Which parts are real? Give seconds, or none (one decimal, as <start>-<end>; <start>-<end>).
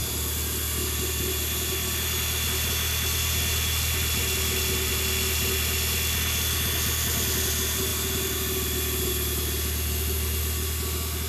0.0-11.3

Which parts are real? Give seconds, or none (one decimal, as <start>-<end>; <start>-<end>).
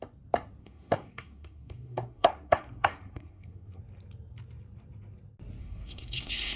0.0-0.6; 3.8-5.6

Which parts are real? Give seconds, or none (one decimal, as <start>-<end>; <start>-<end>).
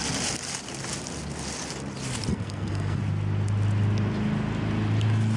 0.0-2.3; 3.0-5.4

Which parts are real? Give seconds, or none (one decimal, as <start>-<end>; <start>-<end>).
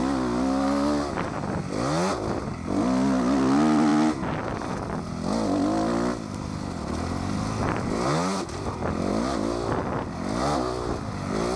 0.0-11.6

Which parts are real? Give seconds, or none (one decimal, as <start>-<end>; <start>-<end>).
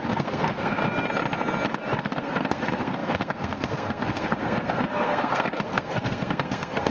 0.8-2.0